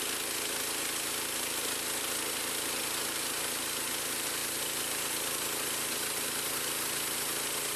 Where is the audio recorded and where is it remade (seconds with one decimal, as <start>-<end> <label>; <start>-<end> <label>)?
0.0-7.8 recorded